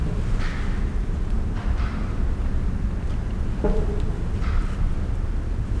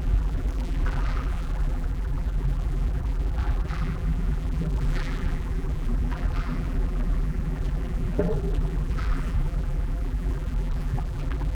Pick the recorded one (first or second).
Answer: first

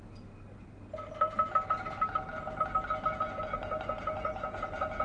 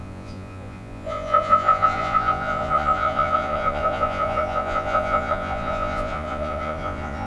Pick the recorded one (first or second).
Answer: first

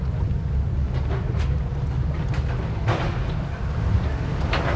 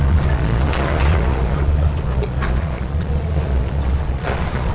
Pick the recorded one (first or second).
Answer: first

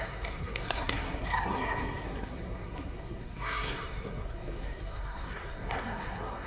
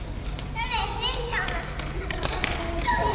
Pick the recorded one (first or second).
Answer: second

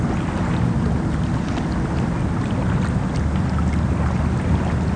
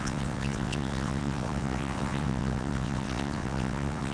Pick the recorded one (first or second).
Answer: first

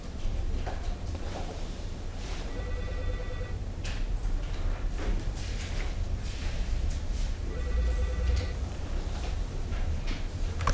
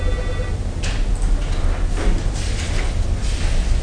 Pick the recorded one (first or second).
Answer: second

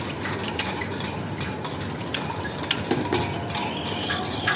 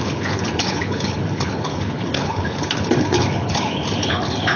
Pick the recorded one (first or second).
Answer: first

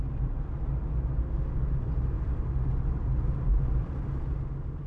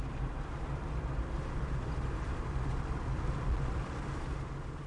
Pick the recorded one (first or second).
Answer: first